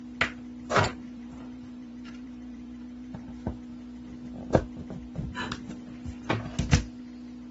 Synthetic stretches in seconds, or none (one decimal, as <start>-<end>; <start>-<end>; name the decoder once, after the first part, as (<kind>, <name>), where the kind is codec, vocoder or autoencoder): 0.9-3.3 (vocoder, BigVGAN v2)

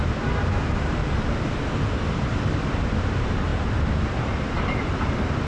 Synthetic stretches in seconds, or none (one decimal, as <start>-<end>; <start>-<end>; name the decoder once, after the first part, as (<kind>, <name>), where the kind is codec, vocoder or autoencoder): 0.0-1.0 (vocoder, BigVGAN v2); 2.8-5.5

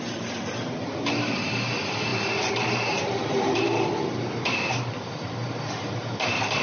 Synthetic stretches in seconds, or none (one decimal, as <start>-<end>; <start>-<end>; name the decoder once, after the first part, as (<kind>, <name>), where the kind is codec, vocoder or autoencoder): 0.0-6.6 (vocoder, BigVGAN v2)

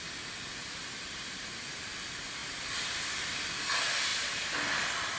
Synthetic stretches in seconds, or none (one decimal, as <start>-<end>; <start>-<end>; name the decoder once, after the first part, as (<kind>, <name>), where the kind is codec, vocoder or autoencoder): 0.6-1.7 (vocoder, BigVGAN v2); 2.4-3.2

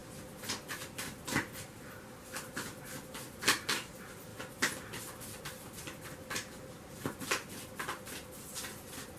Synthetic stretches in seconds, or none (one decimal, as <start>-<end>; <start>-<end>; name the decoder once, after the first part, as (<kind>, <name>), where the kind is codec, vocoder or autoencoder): none

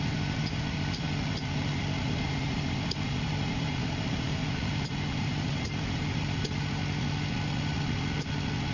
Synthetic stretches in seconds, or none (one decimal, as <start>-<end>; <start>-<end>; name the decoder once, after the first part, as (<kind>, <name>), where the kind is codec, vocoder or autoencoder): 0.0-6.8 (vocoder, BigVGAN v2)